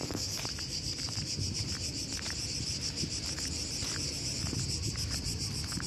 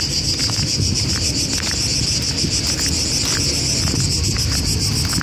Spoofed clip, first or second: first